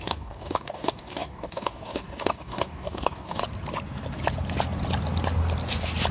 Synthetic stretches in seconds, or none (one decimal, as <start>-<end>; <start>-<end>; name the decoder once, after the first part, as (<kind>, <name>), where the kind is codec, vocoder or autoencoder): 0.0-3.4 (codec, DAC)